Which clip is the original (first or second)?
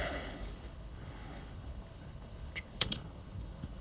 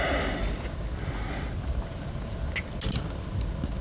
second